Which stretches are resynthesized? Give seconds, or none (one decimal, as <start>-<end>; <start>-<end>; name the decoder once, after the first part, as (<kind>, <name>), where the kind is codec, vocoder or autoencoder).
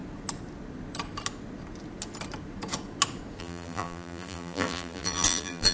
3.4-5.7 (vocoder, BigVGAN v2)